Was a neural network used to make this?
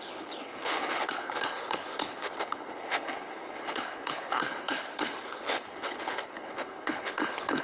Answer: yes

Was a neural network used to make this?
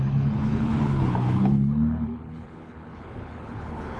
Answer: yes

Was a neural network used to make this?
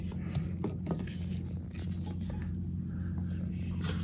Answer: no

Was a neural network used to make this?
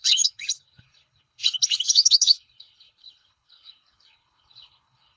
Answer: yes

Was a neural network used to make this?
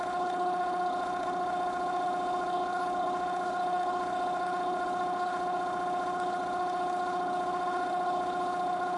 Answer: yes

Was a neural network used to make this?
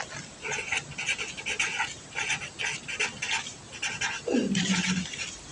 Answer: no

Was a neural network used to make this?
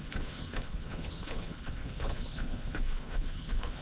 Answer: yes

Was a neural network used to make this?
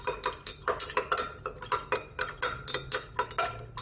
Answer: no